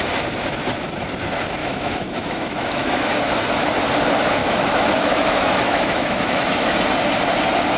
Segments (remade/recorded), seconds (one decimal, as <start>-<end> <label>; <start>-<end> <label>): 0.0-1.6 recorded; 1.6-3.2 remade; 3.2-4.4 recorded; 4.4-6.7 remade; 6.7-7.8 recorded